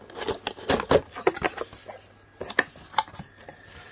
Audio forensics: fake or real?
real